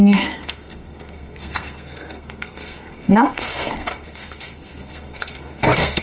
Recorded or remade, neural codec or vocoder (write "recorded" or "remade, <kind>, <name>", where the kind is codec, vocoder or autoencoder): remade, codec, SNAC